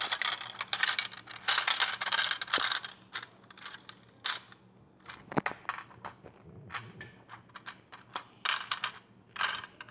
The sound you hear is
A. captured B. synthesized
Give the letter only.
A